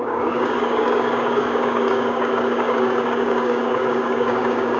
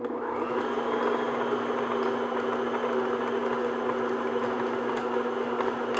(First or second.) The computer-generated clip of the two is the first